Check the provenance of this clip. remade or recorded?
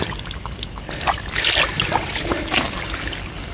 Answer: recorded